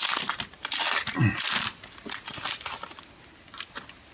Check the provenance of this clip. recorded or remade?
recorded